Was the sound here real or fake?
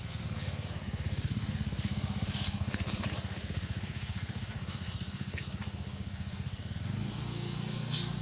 fake